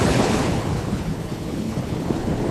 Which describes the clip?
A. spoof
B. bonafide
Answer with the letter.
A